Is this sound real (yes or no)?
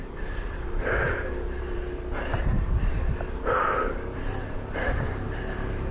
no